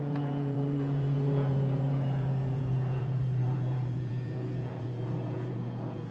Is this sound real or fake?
fake